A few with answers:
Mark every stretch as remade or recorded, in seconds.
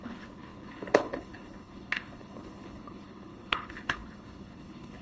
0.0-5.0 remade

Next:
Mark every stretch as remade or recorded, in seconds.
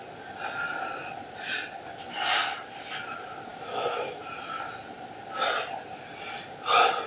0.0-3.5 recorded; 3.5-4.2 remade; 4.2-7.1 recorded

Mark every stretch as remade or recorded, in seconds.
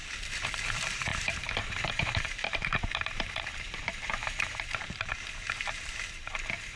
0.0-0.6 recorded; 0.6-6.8 remade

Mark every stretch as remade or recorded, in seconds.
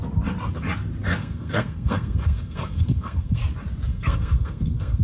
0.0-1.2 recorded; 1.2-3.4 remade; 3.4-3.9 recorded; 3.9-5.0 remade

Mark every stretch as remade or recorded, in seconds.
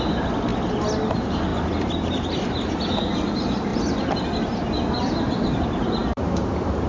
0.0-0.5 remade; 0.5-1.1 recorded; 1.1-1.5 remade; 1.5-2.9 recorded; 2.9-3.7 remade; 3.7-5.5 recorded; 5.5-6.9 remade